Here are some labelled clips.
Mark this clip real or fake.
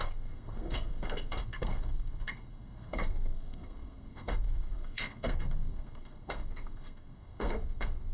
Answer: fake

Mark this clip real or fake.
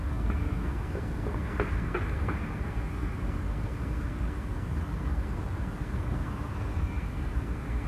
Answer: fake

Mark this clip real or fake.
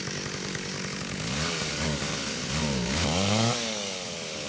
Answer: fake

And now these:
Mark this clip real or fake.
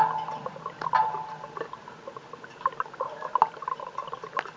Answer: real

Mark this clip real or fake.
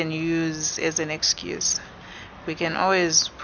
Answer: real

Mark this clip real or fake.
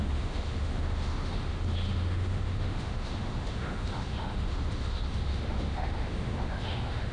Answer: fake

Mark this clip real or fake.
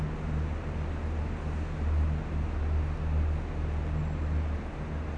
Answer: real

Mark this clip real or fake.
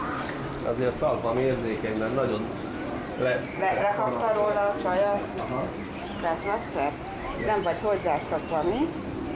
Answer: real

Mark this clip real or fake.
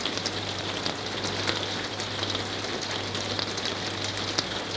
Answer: real